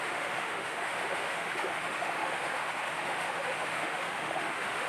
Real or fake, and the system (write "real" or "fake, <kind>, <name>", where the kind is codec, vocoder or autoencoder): fake, autoencoder, DAC-VAE